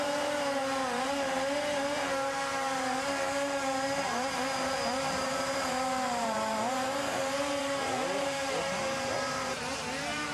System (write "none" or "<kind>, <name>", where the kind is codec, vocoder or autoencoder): vocoder, BigVGAN v2